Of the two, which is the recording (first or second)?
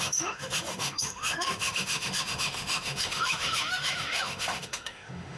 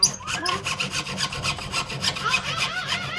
second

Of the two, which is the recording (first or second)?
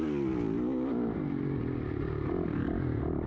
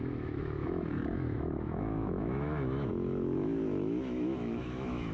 first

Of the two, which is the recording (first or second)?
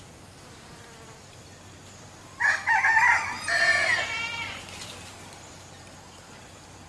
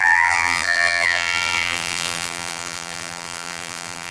first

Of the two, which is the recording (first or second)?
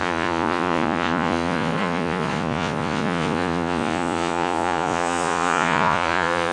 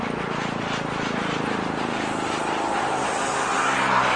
second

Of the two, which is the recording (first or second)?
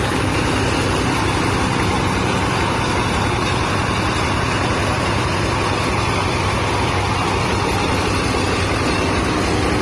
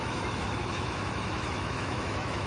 first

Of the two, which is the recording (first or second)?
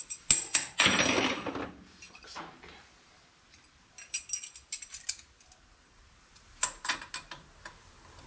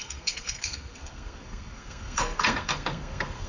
first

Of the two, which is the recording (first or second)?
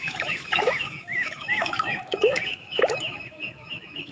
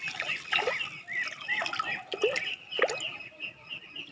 second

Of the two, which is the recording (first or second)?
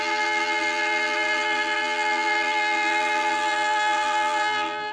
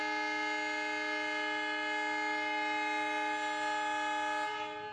second